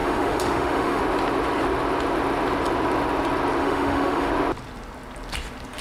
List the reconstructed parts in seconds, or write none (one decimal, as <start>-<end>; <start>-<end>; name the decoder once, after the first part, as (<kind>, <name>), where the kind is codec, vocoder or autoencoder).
0.0-1.0 (autoencoder, DAC-VAE); 3.6-4.3